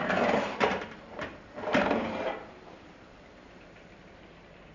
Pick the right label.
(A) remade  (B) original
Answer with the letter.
A